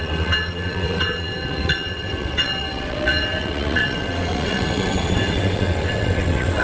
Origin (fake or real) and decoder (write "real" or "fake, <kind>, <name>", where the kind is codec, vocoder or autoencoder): fake, vocoder, WaveNeXt